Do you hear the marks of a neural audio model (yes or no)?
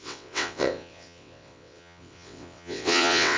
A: yes